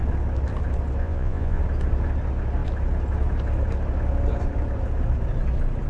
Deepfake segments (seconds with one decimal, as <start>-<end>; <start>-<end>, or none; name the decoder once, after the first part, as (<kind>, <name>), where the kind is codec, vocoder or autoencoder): 1.0-1.6 (vocoder, Vocos)